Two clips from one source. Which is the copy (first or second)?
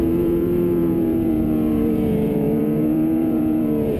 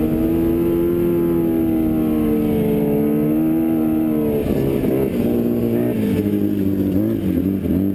first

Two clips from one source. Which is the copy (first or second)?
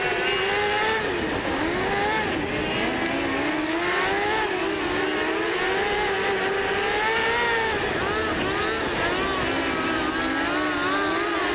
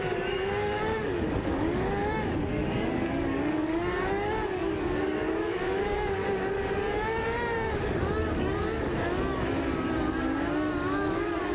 second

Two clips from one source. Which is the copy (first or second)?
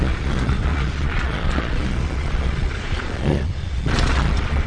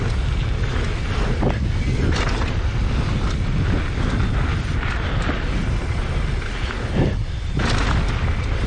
first